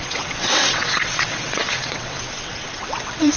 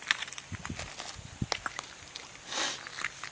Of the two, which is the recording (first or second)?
second